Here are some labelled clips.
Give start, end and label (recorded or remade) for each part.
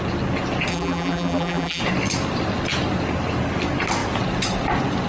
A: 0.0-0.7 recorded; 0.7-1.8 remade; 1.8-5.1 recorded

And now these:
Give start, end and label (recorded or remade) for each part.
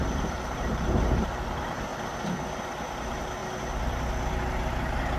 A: 0.0-1.9 remade; 1.9-2.6 recorded; 2.6-3.4 remade; 3.4-5.2 recorded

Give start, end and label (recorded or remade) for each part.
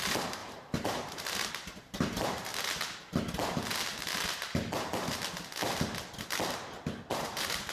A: 0.0-2.5 remade; 2.5-7.1 recorded; 7.1-7.7 remade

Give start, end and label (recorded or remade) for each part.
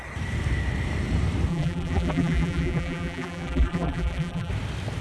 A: 0.0-1.5 recorded; 1.5-4.5 remade; 4.5-5.0 recorded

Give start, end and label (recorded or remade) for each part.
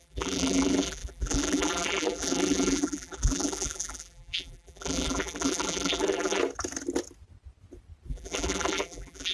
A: 0.0-6.4 remade; 6.4-8.1 recorded; 8.1-9.3 remade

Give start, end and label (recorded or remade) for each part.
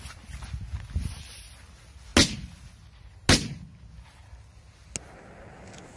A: 0.0-6.0 recorded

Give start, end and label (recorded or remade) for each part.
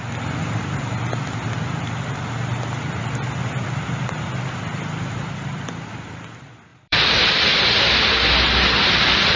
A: 0.0-6.7 recorded; 6.7-7.8 remade; 7.8-9.4 recorded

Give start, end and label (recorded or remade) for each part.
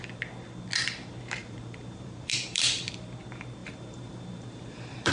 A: 0.0-1.4 recorded; 1.4-2.9 remade; 2.9-3.6 recorded; 3.6-5.1 remade